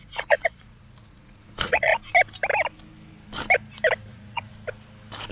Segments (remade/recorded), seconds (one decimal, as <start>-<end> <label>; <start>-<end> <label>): 0.0-1.9 remade; 1.9-4.1 recorded; 4.1-4.5 remade; 4.5-5.3 recorded